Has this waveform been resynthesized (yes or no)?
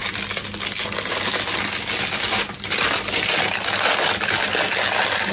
no